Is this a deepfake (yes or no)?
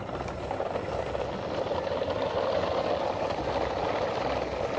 no